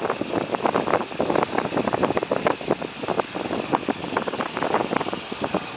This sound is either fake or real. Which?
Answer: real